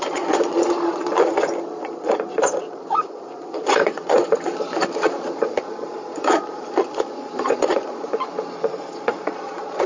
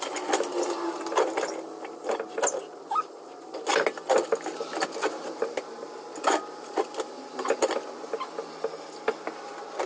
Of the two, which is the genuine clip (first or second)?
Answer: second